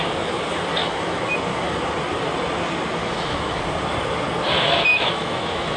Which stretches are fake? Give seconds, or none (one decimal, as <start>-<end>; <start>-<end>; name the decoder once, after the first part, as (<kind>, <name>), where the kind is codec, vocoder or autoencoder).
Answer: 0.8-1.3 (autoencoder, DAC-VAE); 3.0-3.6; 4.9-5.8